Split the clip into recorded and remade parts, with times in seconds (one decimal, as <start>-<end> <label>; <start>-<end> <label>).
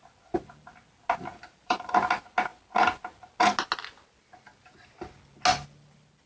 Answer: 0.0-1.3 recorded; 1.3-1.9 remade; 1.9-6.3 recorded